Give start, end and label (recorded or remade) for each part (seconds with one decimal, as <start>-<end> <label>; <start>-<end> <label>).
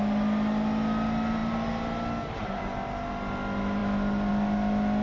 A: 0.0-5.0 recorded